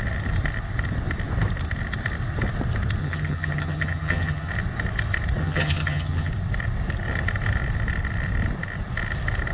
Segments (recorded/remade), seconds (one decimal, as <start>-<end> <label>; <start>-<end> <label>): 0.0-3.0 recorded; 3.0-4.5 remade; 4.5-5.4 recorded; 5.4-6.3 remade; 6.3-9.5 recorded